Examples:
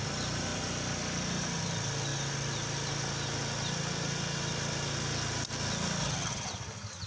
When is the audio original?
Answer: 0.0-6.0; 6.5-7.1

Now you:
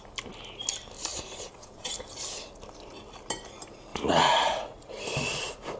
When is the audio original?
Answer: 0.0-1.1; 2.0-3.9; 4.9-5.8

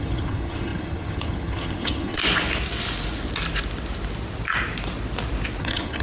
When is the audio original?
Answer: 2.2-5.6

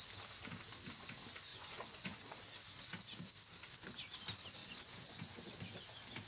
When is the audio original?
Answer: 0.0-1.5; 2.2-4.6; 5.4-6.3

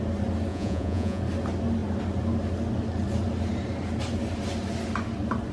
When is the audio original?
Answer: 0.0-0.5; 1.2-5.5